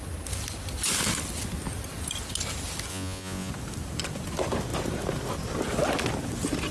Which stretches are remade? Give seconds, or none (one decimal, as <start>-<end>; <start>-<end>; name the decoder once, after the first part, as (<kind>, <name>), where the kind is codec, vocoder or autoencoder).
2.9-3.5 (vocoder, Vocos)